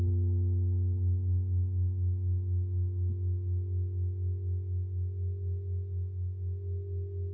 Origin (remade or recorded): recorded